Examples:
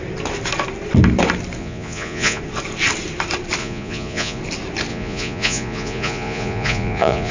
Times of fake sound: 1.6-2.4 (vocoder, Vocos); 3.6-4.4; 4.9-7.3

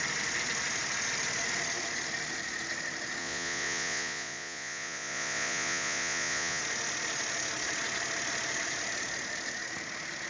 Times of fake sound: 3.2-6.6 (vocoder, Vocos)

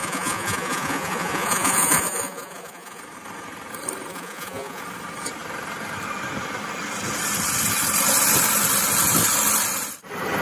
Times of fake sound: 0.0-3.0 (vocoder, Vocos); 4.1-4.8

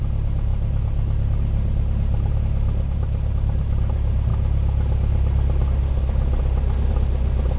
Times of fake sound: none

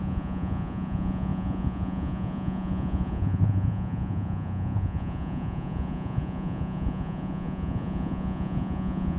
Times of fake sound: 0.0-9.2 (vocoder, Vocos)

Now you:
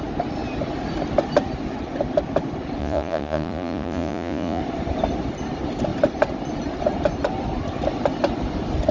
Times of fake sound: 2.8-4.6 (vocoder, Vocos)

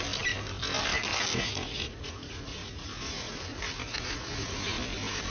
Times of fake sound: 1.4-4.6 (vocoder, Vocos)